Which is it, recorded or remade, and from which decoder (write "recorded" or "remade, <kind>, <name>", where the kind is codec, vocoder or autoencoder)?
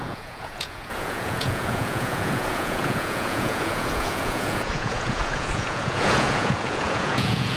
remade, vocoder, Vocos